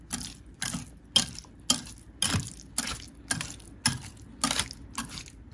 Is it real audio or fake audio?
real